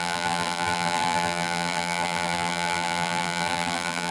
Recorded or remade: remade